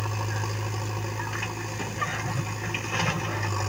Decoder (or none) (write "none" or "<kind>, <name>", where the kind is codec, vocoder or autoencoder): none